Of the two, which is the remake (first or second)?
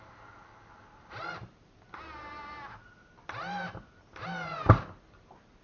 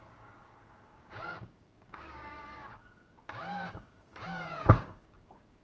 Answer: second